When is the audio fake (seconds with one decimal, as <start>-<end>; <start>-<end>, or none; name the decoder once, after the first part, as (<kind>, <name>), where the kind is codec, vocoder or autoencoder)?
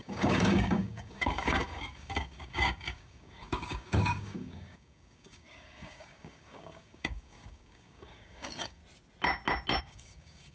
0.0-8.8 (codec, DAC); 9.8-10.5